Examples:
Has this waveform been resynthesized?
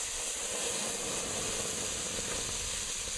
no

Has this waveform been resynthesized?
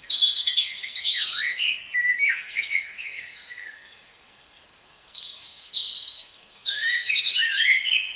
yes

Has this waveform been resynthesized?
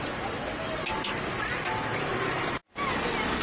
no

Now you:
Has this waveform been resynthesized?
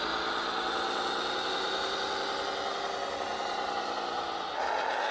no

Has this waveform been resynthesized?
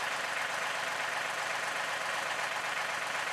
yes